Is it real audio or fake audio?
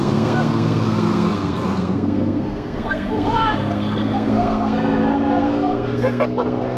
fake